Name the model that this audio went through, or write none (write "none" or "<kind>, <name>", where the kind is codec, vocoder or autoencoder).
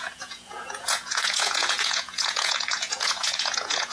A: vocoder, Vocos